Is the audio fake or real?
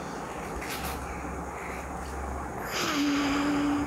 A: real